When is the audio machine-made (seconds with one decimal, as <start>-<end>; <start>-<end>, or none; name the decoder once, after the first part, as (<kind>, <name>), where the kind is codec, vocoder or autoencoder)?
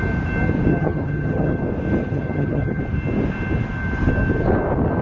0.7-1.6 (vocoder, HiFi-GAN); 2.0-2.8